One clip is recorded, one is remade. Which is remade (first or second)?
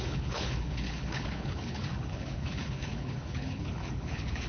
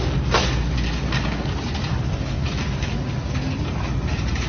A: first